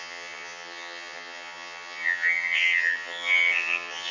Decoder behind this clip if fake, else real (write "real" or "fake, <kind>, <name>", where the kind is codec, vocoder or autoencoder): fake, vocoder, HiFi-GAN